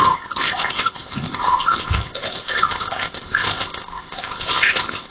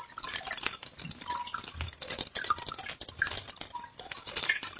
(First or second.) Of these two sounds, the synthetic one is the first